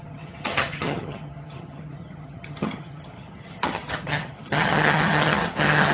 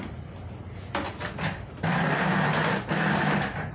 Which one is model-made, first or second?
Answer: first